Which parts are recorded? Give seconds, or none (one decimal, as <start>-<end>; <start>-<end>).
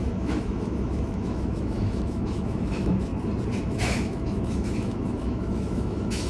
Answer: 3.1-3.6